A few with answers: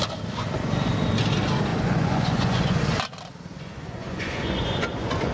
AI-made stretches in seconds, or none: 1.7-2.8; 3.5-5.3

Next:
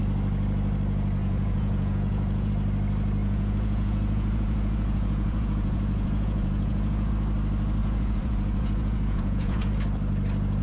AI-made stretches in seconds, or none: 1.2-2.5; 3.2-7.1; 7.8-9.7

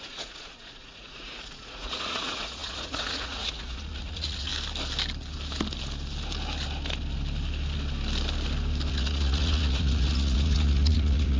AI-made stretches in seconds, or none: 0.0-4.5; 8.9-11.4

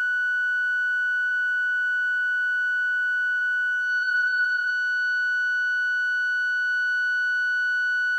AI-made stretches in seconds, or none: 4.0-4.7

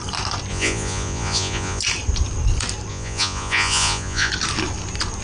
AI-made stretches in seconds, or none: 0.5-1.8; 2.9-4.3

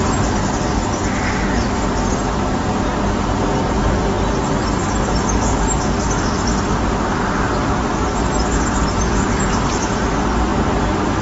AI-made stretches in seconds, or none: none

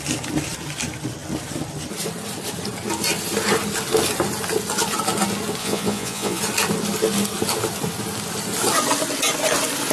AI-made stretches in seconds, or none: 5.6-6.4